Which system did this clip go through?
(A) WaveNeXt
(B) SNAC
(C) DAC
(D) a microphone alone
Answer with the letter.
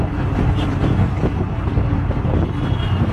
D